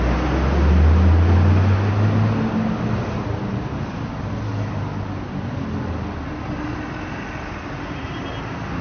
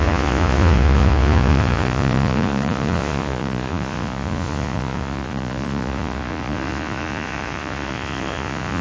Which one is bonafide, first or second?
first